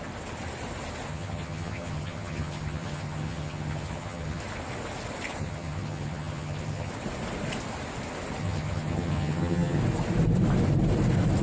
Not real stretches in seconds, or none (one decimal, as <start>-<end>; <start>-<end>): 1.1-4.4; 5.4-6.9; 8.4-9.8